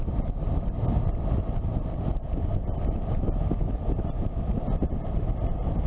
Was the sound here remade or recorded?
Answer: recorded